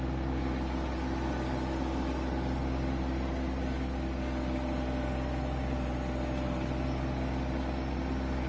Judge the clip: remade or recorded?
recorded